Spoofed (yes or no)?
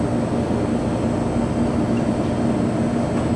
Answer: no